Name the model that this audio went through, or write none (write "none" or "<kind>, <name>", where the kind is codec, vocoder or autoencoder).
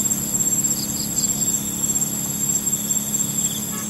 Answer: none